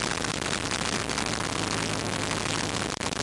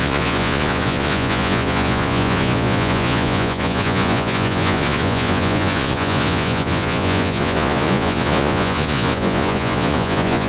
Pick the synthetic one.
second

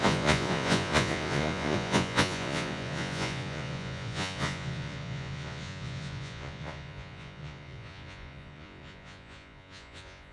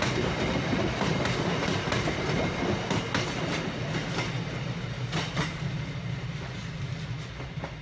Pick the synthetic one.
first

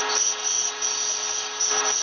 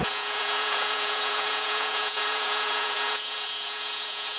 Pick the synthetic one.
second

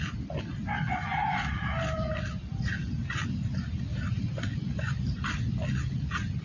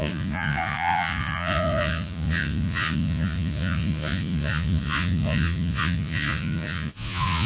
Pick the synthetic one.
second